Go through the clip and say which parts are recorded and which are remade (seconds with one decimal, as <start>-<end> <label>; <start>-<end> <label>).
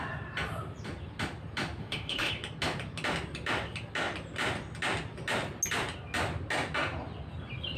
0.0-1.8 recorded; 1.8-2.3 remade; 2.3-7.8 recorded